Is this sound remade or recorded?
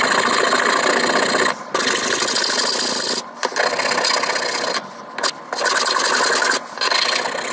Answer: recorded